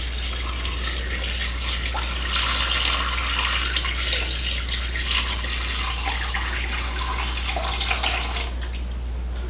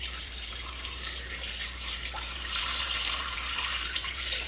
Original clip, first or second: first